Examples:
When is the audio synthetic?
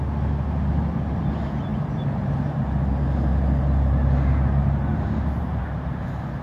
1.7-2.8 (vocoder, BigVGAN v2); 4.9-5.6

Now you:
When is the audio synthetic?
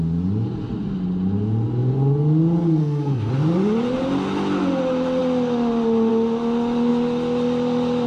2.8-3.3 (codec, SNAC)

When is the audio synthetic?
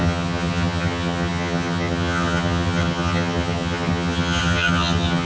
0.0-5.2 (vocoder, HiFi-GAN)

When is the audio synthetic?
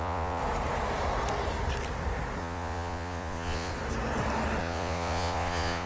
0.0-0.4 (vocoder, Vocos); 2.4-3.7; 4.6-5.9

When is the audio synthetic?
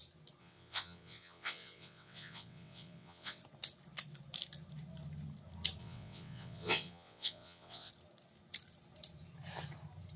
0.4-3.4 (vocoder, WaveNeXt); 5.8-7.9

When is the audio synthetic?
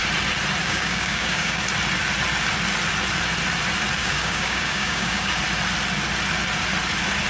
0.6-1.6 (codec, DAC); 4.0-5.4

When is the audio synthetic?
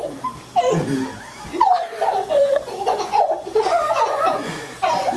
2.2-5.2 (vocoder, Vocos)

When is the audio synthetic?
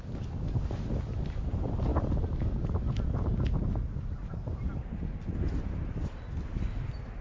none